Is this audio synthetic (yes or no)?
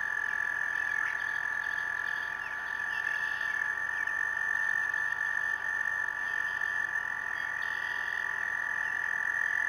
no